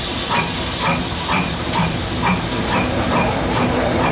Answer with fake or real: real